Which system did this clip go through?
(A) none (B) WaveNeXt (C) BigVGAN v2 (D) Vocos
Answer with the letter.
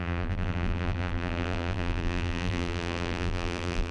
C